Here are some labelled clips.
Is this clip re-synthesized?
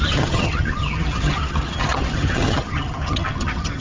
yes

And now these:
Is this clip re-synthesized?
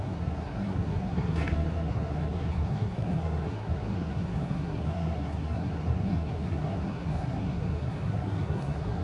yes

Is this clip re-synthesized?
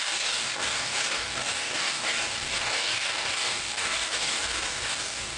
yes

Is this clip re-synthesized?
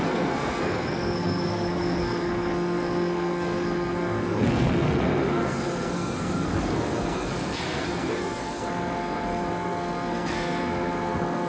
yes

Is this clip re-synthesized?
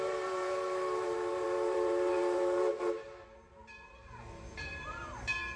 yes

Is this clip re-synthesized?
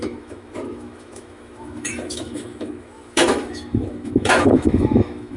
yes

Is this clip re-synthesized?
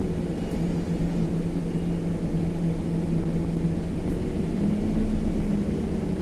no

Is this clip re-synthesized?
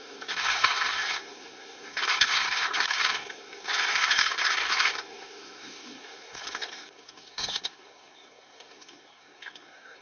yes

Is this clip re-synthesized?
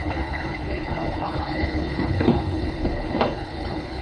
yes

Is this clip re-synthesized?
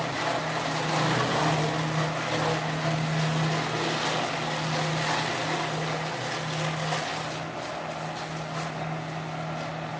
no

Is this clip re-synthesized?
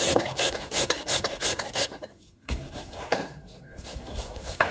yes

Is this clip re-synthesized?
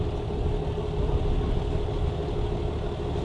no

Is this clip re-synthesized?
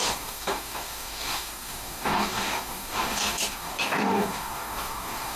yes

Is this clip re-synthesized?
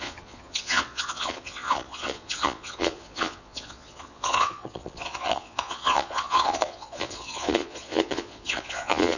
yes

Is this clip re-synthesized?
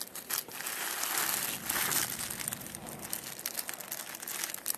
no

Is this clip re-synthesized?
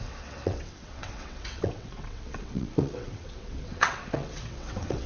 yes